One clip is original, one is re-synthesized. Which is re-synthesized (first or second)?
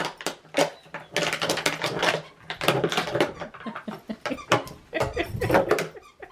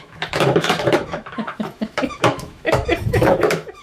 second